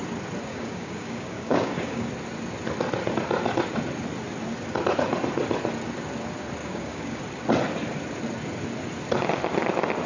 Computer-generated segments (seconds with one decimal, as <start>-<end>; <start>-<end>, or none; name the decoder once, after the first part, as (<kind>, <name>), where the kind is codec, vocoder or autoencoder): 0.5-2.1 (codec, DAC); 6.6-7.2